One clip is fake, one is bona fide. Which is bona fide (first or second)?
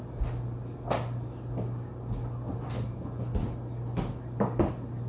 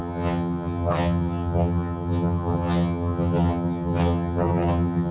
first